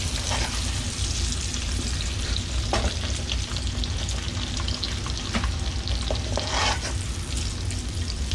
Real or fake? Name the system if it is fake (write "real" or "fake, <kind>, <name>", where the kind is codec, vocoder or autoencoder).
real